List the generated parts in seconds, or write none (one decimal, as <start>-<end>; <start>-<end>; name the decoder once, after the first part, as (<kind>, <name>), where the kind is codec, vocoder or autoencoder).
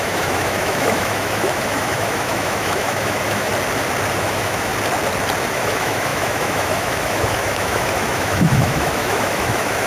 0.0-3.5 (autoencoder, DAC-VAE); 4.2-4.7; 5.5-9.9